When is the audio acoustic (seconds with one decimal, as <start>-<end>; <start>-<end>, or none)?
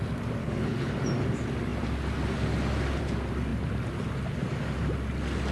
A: 0.0-0.4; 0.9-5.5